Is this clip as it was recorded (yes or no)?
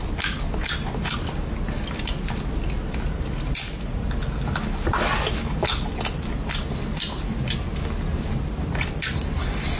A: yes